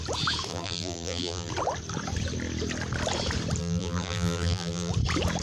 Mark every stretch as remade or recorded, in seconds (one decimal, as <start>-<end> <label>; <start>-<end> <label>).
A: 0.0-0.5 recorded; 0.5-1.5 remade; 1.5-3.6 recorded; 3.6-4.9 remade; 4.9-5.4 recorded